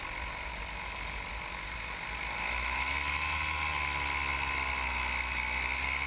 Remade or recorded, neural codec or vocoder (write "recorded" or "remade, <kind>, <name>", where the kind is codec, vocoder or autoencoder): recorded